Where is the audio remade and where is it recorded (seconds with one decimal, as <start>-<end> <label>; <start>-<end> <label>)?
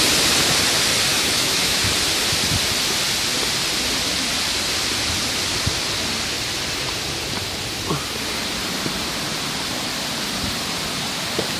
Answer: 0.0-1.1 recorded; 1.1-1.8 remade; 1.8-11.6 recorded